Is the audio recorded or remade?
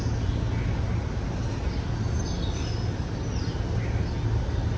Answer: recorded